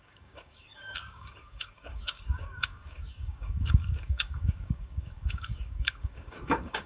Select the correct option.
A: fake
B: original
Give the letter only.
A